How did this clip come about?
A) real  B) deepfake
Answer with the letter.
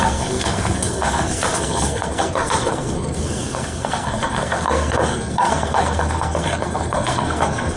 B